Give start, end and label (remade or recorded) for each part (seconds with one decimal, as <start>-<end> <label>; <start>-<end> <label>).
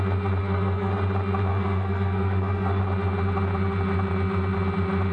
0.0-0.4 recorded; 0.4-0.9 remade; 0.9-1.5 recorded; 1.5-2.8 remade; 2.8-5.1 recorded